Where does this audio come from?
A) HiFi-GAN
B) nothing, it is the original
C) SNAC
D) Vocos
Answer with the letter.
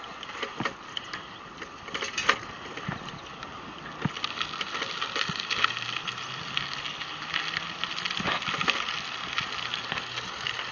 B